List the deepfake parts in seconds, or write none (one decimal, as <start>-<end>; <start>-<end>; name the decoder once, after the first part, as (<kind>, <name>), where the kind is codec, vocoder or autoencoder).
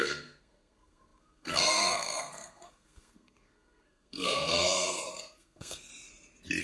0.0-5.9 (codec, SNAC)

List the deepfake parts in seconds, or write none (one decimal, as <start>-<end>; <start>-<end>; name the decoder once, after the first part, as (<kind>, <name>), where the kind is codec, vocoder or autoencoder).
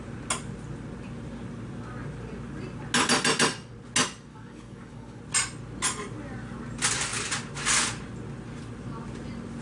4.3-5.2 (codec, DAC)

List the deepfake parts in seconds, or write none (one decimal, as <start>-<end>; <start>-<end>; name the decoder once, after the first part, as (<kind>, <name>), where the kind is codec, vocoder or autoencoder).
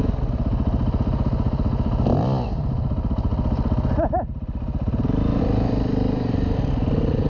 none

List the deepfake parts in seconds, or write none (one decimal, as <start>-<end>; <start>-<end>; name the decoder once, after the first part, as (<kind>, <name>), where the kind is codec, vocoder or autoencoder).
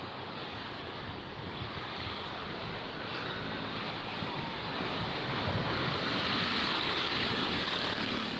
0.0-2.4 (codec, DAC); 6.6-8.4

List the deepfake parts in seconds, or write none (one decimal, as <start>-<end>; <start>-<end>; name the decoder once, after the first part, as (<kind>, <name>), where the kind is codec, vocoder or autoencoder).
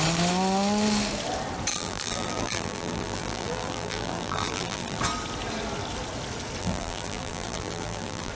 1.7-5.0 (vocoder, BigVGAN v2); 6.6-8.3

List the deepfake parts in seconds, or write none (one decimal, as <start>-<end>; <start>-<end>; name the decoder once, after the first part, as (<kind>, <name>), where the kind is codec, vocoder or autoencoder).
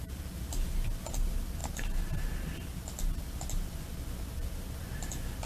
none